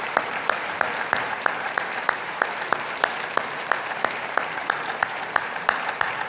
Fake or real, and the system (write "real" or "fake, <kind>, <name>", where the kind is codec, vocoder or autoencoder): fake, vocoder, BigVGAN v2